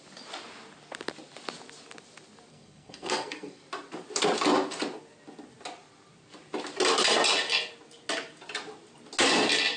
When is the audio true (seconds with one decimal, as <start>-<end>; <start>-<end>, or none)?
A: 0.0-2.5; 3.6-9.8